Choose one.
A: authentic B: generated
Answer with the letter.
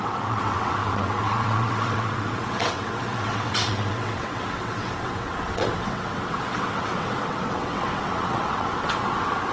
B